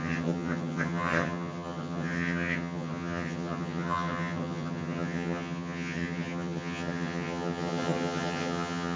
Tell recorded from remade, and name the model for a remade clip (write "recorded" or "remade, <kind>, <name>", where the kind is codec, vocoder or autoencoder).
remade, vocoder, HiFi-GAN